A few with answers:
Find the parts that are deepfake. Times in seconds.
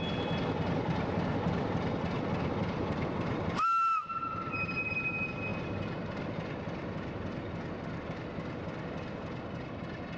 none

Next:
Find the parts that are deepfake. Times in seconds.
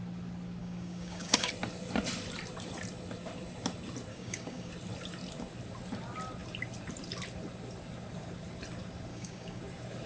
0.6-1.5 (codec, DAC); 4.1-4.7; 9.1-9.6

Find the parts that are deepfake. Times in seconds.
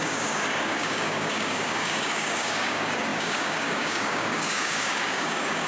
0.0-5.7 (codec, DAC)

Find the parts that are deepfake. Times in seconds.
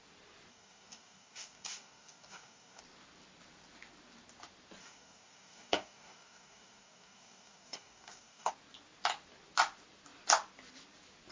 0.5-2.8 (codec, DAC); 4.8-8.5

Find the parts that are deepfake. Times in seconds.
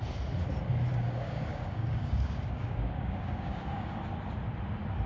0.9-4.0 (codec, DAC)